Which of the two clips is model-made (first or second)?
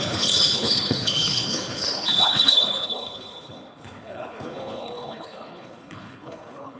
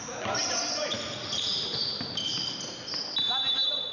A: first